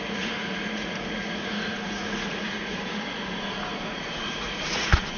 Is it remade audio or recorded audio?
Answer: remade